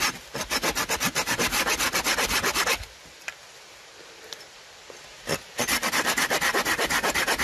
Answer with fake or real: real